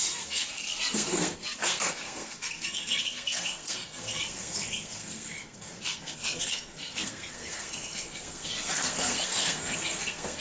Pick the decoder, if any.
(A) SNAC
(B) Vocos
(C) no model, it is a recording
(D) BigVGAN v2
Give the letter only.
A